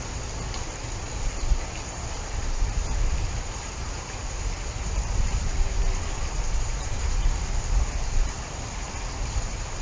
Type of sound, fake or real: fake